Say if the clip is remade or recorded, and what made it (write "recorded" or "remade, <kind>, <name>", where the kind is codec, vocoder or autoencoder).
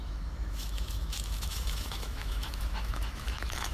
remade, autoencoder, DAC-VAE